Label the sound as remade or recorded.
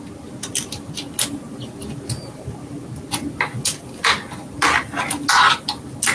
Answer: recorded